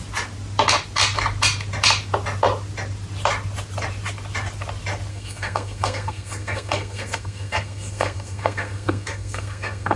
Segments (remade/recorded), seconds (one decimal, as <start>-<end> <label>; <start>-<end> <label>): 0.0-5.1 recorded; 5.1-10.0 remade